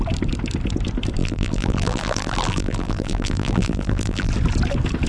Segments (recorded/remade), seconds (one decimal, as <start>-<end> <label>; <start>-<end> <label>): 0.0-1.2 recorded; 1.2-4.3 remade; 4.3-5.1 recorded